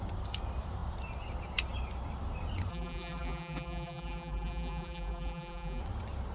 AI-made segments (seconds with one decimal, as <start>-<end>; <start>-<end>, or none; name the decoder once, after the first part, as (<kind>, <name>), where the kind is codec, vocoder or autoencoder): 2.7-5.8 (vocoder, BigVGAN v2)